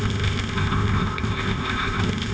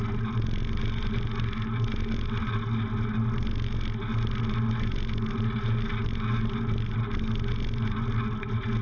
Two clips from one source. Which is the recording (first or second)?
second